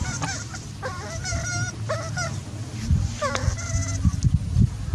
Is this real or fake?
real